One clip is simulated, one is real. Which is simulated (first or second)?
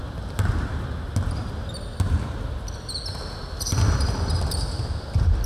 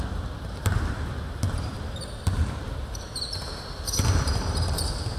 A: second